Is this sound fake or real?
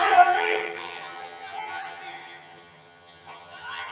fake